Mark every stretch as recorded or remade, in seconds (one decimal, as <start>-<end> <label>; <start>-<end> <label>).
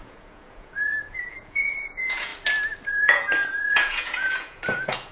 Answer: 0.0-2.3 remade; 2.3-2.9 recorded; 2.9-5.1 remade